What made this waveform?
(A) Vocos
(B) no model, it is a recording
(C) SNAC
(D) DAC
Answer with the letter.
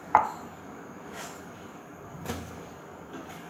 D